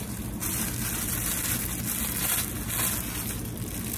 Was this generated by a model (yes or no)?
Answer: no